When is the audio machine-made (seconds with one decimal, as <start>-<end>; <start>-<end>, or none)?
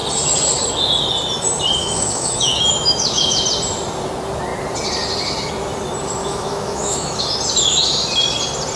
1.8-3.4; 6.2-7.2